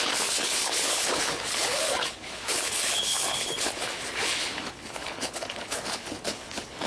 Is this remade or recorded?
remade